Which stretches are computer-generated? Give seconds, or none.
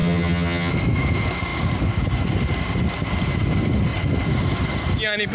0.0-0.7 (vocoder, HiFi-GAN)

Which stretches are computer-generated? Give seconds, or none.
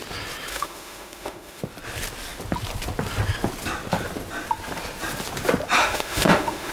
0.5-1.6 (autoencoder, DAC-VAE); 5.8-6.7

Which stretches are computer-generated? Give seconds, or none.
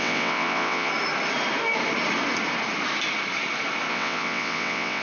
0.0-0.9 (vocoder, WaveNeXt); 3.9-5.0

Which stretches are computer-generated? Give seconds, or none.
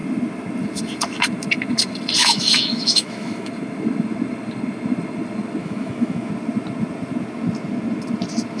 2.2-3.5 (autoencoder, DAC-VAE); 5.6-6.3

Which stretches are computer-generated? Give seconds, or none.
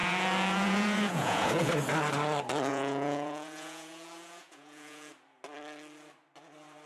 0.0-1.7 (vocoder, Vocos); 2.7-5.1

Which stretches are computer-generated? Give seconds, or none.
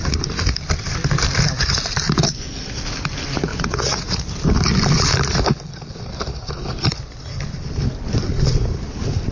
3.5-4.3 (vocoder, Vocos)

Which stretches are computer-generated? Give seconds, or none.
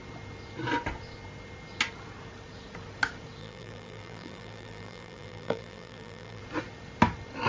3.4-6.4 (vocoder, BigVGAN v2)